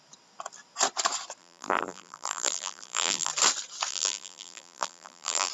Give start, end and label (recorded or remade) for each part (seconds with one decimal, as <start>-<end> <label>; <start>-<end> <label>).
0.0-1.4 recorded; 1.4-3.3 remade; 3.3-3.9 recorded; 3.9-5.5 remade

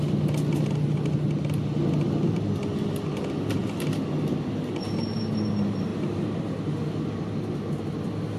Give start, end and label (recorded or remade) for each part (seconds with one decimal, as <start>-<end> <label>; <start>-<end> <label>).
0.0-5.9 recorded; 5.9-6.5 remade; 6.5-8.4 recorded

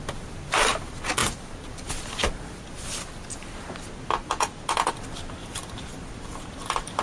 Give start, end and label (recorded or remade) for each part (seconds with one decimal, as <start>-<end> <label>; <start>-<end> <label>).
0.0-5.4 recorded; 5.4-6.2 remade; 6.2-7.0 recorded

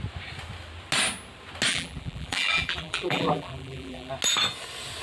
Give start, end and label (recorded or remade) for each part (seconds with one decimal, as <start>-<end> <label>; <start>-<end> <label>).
0.0-1.7 recorded; 1.7-4.1 remade; 4.1-5.0 recorded

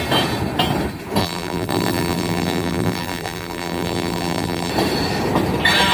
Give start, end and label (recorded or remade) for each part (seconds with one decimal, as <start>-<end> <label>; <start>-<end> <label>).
0.0-1.2 recorded; 1.2-4.7 remade; 4.7-5.9 recorded

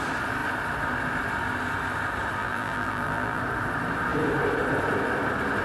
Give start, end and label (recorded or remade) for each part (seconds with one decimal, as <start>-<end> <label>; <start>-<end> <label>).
0.0-2.4 recorded; 2.4-3.4 remade; 3.4-5.6 recorded